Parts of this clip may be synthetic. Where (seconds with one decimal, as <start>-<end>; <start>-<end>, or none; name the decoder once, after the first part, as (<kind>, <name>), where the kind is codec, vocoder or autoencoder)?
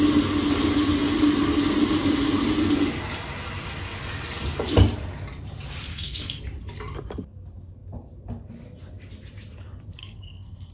5.9-6.4 (codec, SNAC); 10.0-10.7